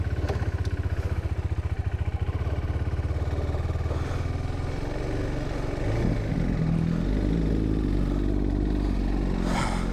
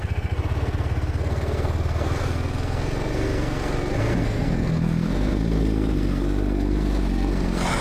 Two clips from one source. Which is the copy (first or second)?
second